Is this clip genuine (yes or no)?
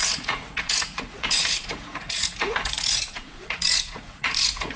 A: no